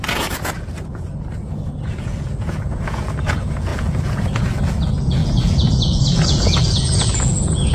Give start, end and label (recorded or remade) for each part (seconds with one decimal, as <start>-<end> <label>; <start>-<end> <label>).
0.0-7.7 remade